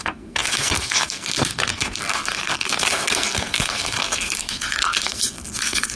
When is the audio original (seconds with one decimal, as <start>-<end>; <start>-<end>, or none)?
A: none